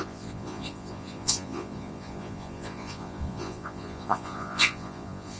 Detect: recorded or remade remade